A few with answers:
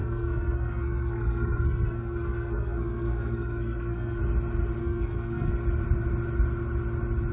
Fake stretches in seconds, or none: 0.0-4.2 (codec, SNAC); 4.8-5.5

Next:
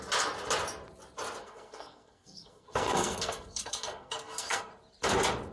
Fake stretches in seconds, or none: 1.4-4.7 (codec, SNAC)

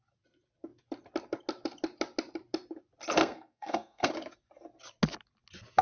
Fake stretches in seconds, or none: 3.2-4.1 (codec, SNAC)

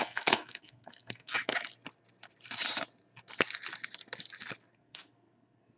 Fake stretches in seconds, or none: 0.0-1.3 (codec, SNAC); 4.7-5.8

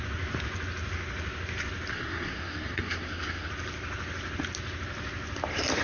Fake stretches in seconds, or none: 1.9-3.5 (codec, SNAC)